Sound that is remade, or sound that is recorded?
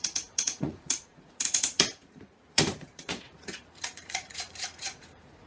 remade